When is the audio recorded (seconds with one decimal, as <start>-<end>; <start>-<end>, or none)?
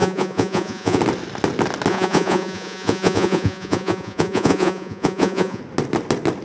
1.0-1.9; 5.6-6.4